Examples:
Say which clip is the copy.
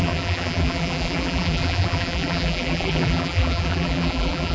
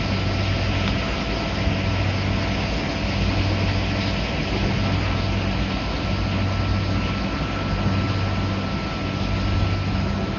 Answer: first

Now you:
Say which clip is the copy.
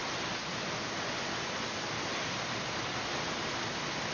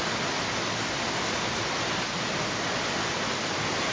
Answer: second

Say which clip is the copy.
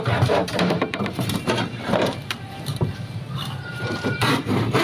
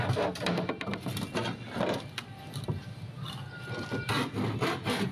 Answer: first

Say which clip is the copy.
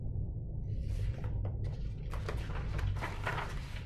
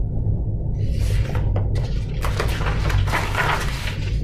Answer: first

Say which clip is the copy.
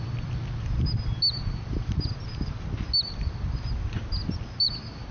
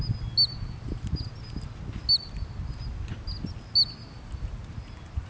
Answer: first